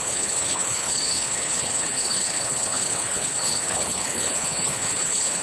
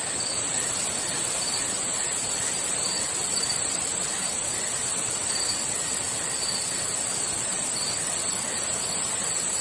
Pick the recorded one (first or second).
second